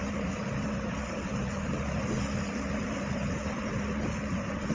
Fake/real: real